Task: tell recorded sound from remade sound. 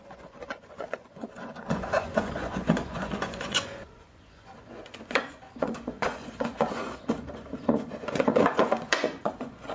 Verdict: remade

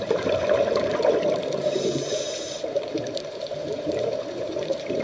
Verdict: remade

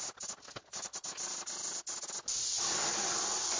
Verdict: recorded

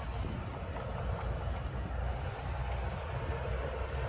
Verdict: recorded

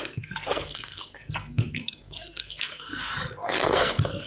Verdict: remade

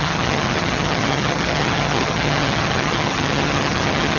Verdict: remade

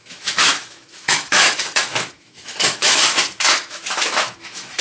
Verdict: remade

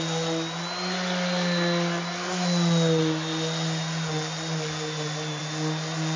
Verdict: recorded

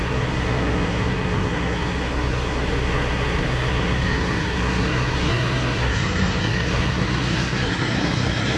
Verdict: remade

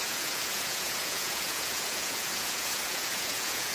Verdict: remade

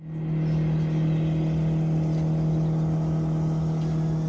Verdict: recorded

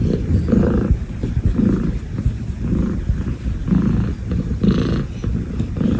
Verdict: recorded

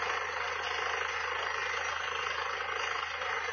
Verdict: recorded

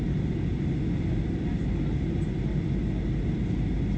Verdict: recorded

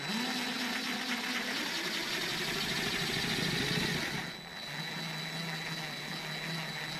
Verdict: recorded